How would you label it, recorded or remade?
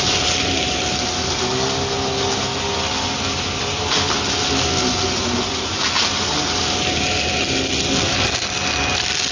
recorded